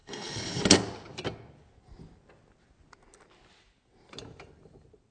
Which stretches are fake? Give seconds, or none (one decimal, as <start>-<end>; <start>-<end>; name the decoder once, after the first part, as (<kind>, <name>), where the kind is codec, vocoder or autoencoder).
0.0-0.6 (codec, HILCodec)